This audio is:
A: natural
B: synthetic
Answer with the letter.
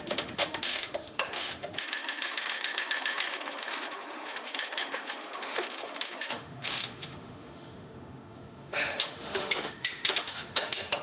B